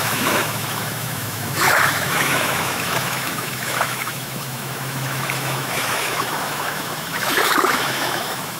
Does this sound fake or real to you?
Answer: fake